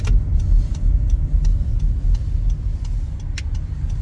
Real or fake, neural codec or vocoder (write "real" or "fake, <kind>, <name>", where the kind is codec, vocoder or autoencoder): real